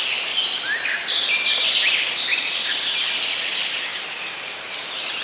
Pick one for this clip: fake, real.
real